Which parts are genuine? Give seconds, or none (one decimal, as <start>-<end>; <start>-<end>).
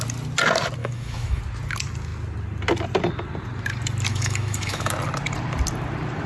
0.0-0.8; 1.4-4.1; 4.9-6.3